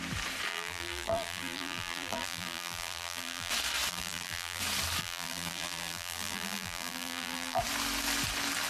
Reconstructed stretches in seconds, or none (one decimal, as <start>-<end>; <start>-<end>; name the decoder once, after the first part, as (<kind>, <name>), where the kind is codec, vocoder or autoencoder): 0.5-3.5 (vocoder, BigVGAN v2); 3.9-4.6; 5.0-7.6